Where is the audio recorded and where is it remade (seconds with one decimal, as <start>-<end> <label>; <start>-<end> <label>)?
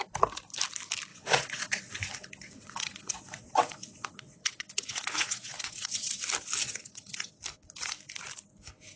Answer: 0.0-1.1 recorded; 1.1-6.1 remade; 6.1-6.6 recorded; 6.6-7.4 remade; 7.4-9.0 recorded